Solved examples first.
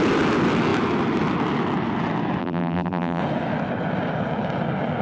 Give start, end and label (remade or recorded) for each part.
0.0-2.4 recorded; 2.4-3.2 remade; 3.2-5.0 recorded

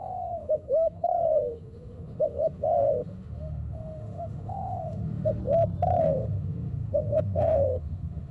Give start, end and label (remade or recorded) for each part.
0.0-5.4 remade; 5.4-6.0 recorded; 6.0-8.3 remade

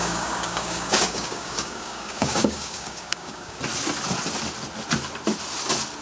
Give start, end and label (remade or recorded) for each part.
0.0-3.6 remade; 3.6-6.0 recorded